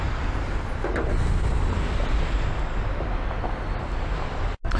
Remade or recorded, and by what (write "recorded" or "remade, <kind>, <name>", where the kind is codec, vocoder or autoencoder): recorded